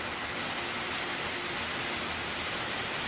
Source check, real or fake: real